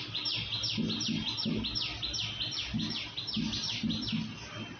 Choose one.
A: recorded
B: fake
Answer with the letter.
A